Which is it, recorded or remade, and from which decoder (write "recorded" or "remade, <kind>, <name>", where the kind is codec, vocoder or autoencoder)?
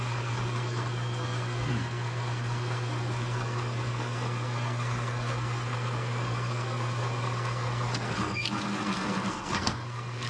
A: remade, codec, SNAC